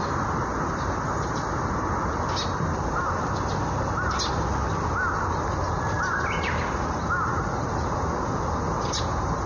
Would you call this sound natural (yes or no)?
yes